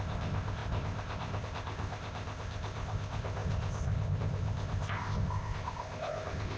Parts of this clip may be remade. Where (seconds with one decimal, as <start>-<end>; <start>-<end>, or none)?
0.0-6.6